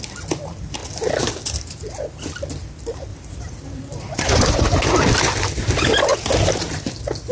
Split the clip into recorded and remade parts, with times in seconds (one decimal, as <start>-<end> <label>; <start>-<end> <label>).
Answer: 0.0-3.1 recorded; 3.1-4.5 remade; 4.5-7.3 recorded